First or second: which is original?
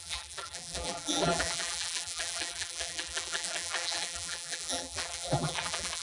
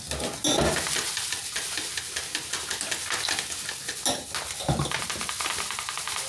second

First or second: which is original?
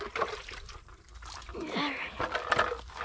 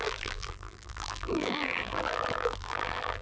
first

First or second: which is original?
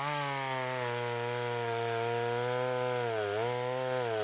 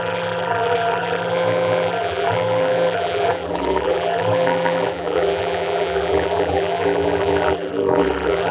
first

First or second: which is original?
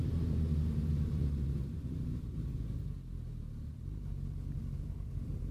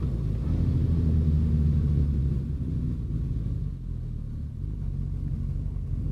second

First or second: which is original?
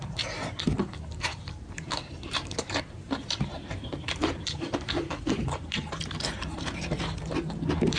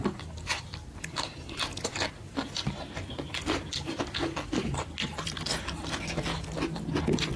second